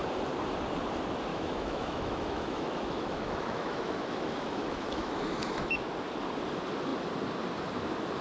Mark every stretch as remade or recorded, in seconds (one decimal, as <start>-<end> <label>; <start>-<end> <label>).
0.0-1.3 recorded; 1.3-5.9 remade; 5.9-8.2 recorded